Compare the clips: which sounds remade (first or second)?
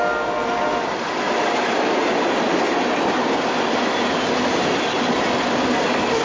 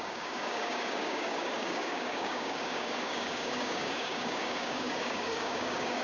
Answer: second